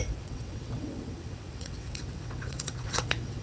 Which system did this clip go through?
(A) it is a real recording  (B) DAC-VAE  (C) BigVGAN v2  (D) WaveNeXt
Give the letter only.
D